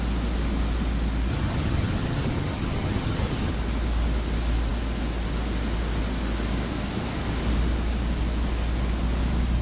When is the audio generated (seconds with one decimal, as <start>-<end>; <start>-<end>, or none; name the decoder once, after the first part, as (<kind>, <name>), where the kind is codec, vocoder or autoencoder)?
1.3-3.5 (vocoder, HiFi-GAN)